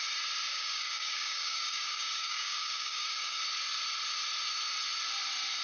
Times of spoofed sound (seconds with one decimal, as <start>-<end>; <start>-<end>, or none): 0.5-3.4